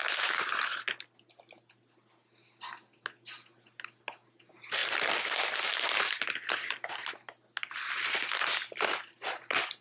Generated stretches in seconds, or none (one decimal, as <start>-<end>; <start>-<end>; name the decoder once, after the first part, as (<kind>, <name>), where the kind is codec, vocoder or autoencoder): 0.0-0.5 (autoencoder, DAC-VAE)